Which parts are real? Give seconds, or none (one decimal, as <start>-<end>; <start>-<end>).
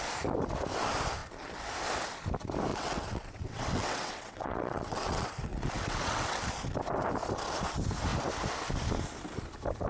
0.0-2.7; 6.4-9.9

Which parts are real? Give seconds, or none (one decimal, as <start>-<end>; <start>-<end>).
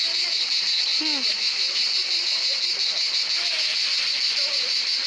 0.0-1.3; 1.8-5.1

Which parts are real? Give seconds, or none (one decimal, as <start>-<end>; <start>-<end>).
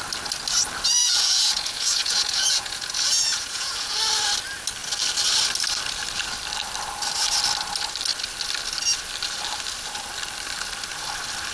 0.0-1.0; 4.0-11.5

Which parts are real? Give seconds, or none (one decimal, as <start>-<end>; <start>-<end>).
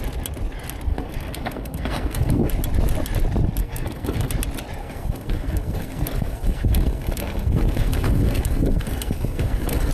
0.0-0.9; 2.5-3.6; 4.3-4.8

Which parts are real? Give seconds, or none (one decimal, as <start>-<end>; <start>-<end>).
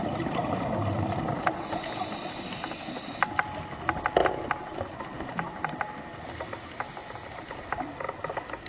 0.0-8.7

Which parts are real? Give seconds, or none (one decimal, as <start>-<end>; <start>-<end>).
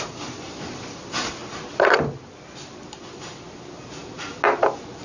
0.0-5.0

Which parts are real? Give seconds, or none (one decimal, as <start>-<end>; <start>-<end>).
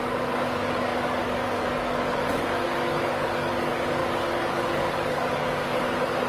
none